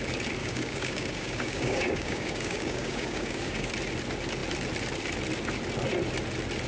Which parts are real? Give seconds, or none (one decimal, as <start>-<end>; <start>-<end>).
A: 0.0-0.4; 3.7-6.7